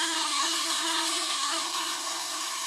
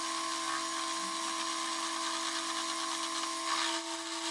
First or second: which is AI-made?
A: first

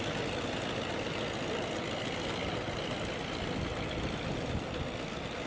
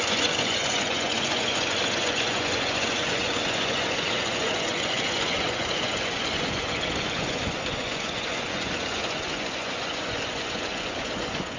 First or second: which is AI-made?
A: second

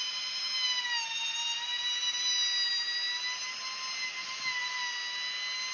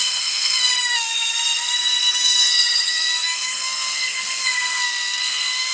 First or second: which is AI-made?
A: second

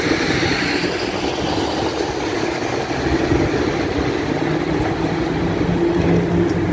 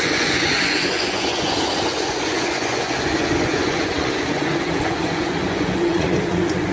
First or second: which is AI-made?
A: second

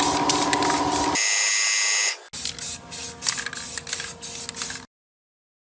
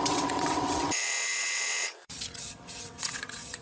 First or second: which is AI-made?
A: second